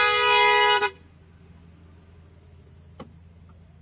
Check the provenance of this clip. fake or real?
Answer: real